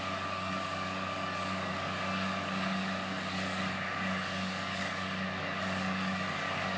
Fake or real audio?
fake